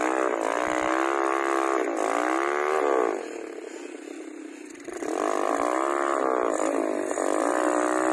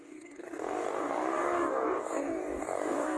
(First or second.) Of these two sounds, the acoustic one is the first